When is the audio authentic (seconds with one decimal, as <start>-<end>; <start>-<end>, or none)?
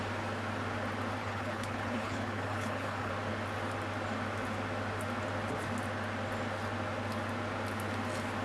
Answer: 0.0-1.2; 3.1-8.4